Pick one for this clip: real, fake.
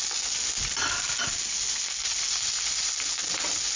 real